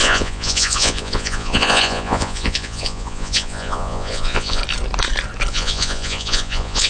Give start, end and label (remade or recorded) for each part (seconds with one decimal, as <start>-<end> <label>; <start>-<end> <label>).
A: 0.0-4.6 remade; 4.6-5.5 recorded; 5.5-6.9 remade